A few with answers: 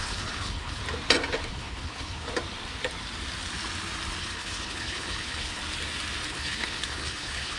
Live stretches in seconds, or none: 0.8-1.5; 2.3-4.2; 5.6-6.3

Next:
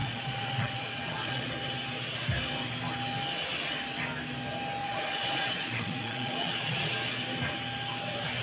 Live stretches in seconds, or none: 1.5-4.8; 6.9-8.4

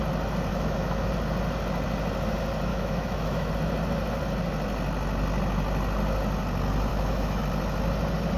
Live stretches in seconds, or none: 0.0-0.5; 1.1-2.7; 3.5-6.9; 7.4-8.4